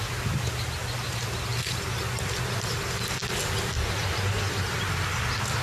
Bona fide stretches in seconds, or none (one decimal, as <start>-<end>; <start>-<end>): 0.0-5.6